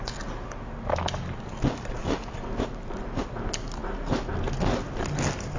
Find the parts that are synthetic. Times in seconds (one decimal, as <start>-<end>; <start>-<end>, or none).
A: none